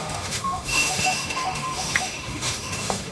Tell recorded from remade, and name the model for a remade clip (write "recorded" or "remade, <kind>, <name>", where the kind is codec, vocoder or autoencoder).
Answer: remade, autoencoder, DAC-VAE